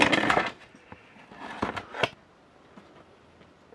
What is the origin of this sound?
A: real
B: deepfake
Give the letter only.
A